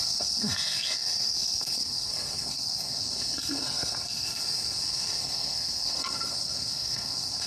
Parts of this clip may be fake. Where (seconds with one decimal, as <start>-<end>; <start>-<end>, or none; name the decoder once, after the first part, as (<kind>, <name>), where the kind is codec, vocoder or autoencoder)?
0.0-7.5 (codec, SNAC)